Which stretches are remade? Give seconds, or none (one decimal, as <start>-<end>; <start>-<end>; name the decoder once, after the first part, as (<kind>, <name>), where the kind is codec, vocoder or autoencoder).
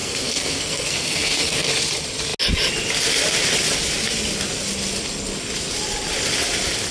0.0-1.7 (codec, SNAC)